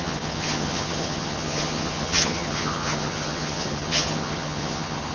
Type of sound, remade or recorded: remade